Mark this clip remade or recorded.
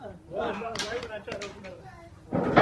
remade